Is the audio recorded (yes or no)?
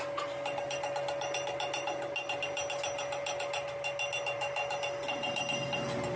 yes